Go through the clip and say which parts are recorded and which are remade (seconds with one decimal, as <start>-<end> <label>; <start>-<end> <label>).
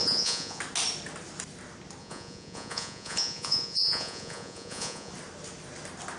0.0-0.6 remade; 0.6-2.0 recorded; 2.0-5.1 remade; 5.1-6.2 recorded